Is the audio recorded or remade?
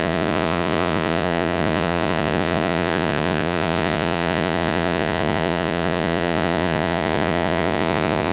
remade